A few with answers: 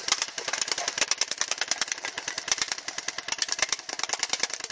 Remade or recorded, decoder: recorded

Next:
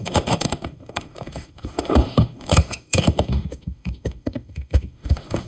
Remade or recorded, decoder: remade, autoencoder, DAC-VAE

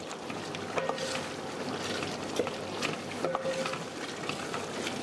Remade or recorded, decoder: recorded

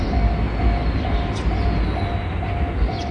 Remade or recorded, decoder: recorded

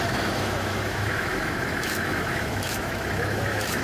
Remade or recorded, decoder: remade, autoencoder, DAC-VAE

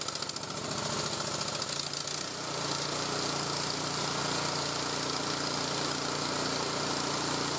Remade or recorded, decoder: recorded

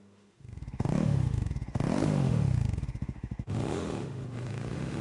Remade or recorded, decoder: remade, autoencoder, DAC-VAE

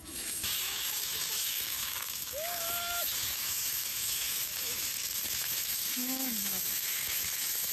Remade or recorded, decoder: remade, autoencoder, DAC-VAE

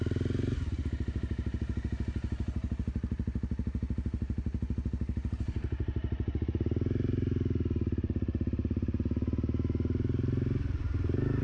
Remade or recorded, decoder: recorded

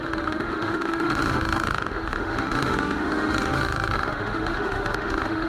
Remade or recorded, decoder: remade, autoencoder, DAC-VAE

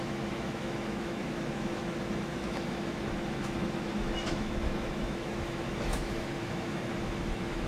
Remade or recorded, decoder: remade, autoencoder, DAC-VAE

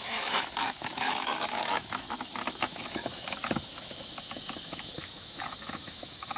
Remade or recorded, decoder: remade, autoencoder, DAC-VAE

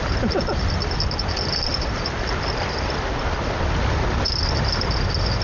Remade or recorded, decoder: recorded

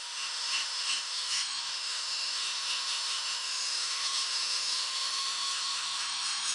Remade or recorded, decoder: remade, autoencoder, DAC-VAE